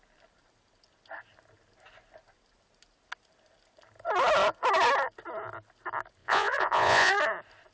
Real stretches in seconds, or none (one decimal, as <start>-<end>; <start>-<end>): 0.0-6.2; 7.1-7.7